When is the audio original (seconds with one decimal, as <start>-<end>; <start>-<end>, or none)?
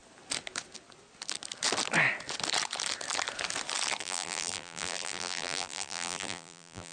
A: 0.0-4.0